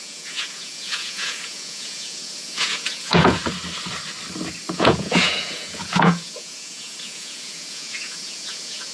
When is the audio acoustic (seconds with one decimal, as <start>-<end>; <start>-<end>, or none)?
3.4-4.7